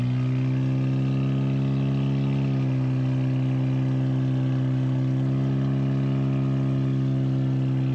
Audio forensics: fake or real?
real